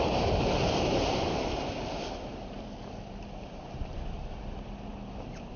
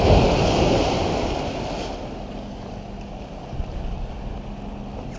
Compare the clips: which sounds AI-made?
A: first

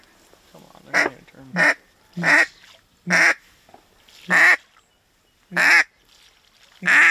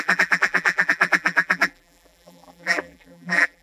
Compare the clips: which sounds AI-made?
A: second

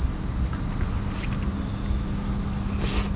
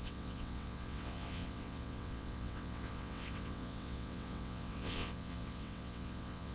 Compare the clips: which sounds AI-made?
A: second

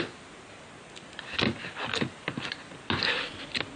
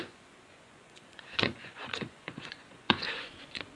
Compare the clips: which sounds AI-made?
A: second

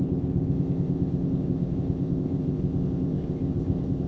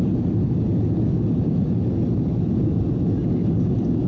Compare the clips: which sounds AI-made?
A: first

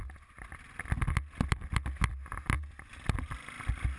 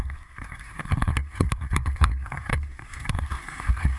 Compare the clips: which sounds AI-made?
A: second